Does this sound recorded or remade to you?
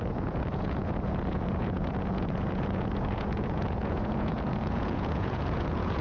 remade